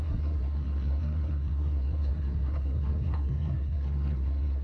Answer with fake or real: fake